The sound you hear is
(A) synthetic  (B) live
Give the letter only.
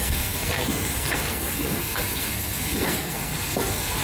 A